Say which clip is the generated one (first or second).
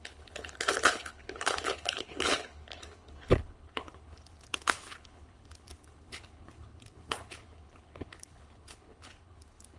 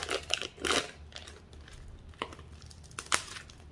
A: first